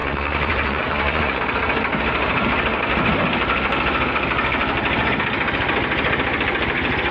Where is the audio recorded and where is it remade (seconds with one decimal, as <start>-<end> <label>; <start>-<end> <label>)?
0.0-1.4 remade; 1.4-7.1 recorded